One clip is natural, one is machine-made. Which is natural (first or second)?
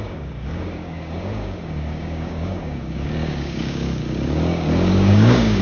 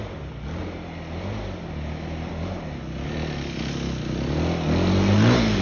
second